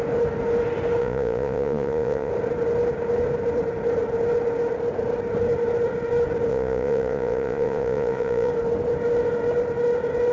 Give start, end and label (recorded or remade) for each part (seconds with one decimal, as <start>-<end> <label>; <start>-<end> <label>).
0.0-1.0 recorded; 1.0-2.3 remade; 2.3-6.5 recorded; 6.5-8.5 remade; 8.5-10.3 recorded